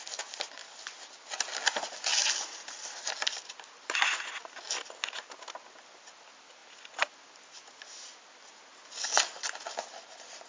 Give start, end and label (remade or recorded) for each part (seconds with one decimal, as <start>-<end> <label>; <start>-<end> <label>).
0.0-10.5 recorded